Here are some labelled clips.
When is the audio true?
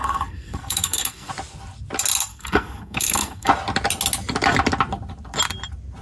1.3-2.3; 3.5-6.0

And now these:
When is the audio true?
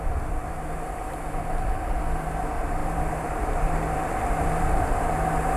0.0-2.8; 4.7-5.6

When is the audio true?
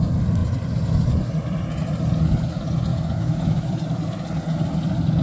0.0-2.9; 3.7-5.2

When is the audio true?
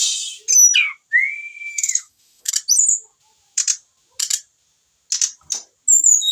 0.0-1.7; 2.5-6.3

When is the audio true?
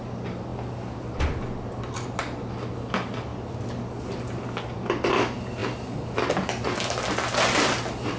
0.0-8.2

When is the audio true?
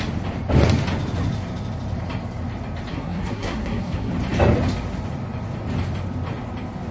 0.0-2.9; 4.1-6.9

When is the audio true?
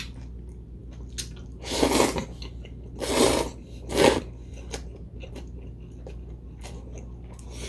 0.0-7.7